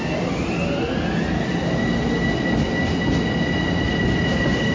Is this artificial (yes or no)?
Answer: no